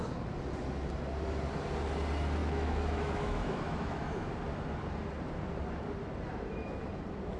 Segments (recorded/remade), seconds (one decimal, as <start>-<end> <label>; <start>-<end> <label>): 0.0-2.4 recorded; 2.4-4.3 remade; 4.3-7.4 recorded